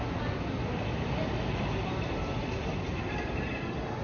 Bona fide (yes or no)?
yes